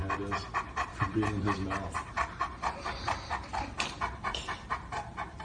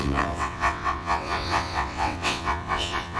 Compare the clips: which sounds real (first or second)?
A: first